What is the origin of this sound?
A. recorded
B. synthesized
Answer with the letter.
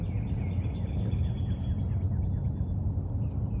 A